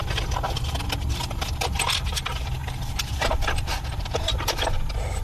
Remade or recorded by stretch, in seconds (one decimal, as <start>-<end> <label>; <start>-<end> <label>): 0.0-5.2 recorded